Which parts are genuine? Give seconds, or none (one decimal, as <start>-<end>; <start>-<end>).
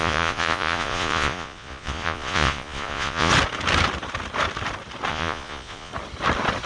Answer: 3.3-5.1; 5.9-6.7